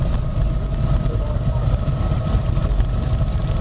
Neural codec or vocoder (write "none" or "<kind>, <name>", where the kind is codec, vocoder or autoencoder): vocoder, BigVGAN v2